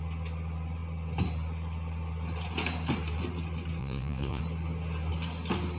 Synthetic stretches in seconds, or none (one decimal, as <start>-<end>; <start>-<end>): 3.8-4.4